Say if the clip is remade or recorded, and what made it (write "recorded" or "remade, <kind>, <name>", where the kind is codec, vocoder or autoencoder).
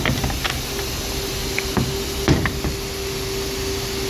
recorded